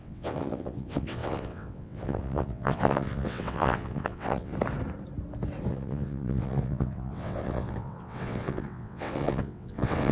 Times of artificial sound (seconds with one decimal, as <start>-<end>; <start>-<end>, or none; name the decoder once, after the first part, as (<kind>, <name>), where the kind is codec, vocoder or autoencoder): 0.0-4.5 (vocoder, WaveNeXt); 5.7-10.1